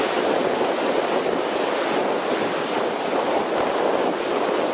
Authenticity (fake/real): real